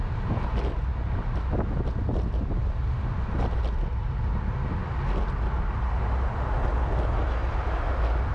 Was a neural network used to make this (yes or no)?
no